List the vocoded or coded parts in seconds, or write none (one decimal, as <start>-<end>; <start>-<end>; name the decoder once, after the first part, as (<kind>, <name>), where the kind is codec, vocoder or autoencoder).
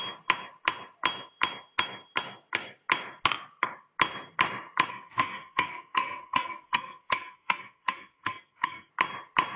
4.9-8.9 (codec, SNAC)